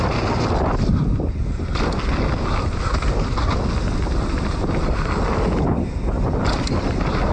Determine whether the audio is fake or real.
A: real